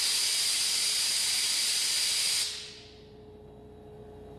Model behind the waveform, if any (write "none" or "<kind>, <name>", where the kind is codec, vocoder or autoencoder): none